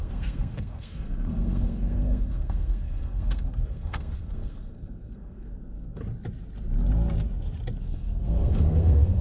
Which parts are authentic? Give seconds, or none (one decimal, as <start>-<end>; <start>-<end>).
6.0-7.8